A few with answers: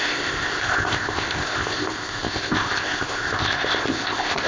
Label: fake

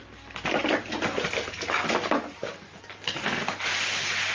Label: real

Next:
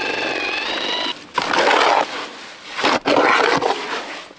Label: real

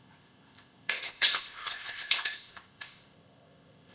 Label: fake